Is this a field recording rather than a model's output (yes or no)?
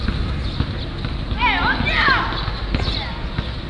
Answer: yes